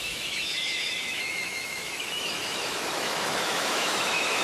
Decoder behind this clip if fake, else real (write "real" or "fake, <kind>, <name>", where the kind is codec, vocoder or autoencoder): fake, autoencoder, DAC-VAE